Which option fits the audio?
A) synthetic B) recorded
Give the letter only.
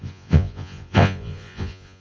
A